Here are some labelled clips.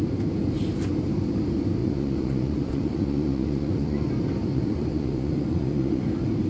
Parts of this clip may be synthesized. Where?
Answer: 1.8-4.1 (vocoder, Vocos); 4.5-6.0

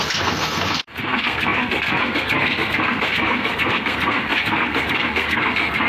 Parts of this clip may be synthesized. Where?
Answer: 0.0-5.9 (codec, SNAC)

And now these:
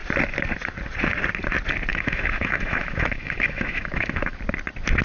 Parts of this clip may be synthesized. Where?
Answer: 1.9-4.4 (autoencoder, DAC-VAE)

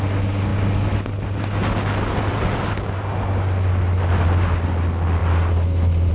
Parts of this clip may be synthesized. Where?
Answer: none

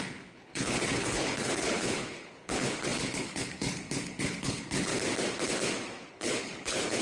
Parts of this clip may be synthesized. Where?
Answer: 0.0-4.9 (codec, HILCodec); 6.1-7.0